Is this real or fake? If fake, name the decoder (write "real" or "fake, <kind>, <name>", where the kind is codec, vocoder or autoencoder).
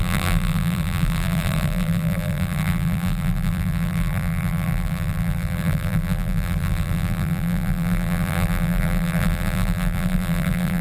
fake, vocoder, BigVGAN v2